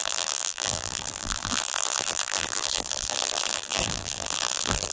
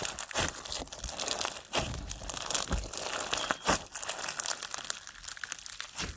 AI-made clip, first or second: first